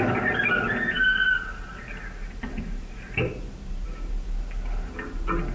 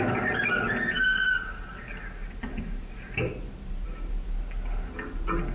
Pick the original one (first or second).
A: second